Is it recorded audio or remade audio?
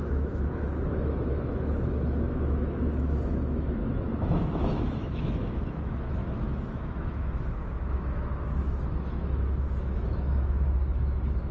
remade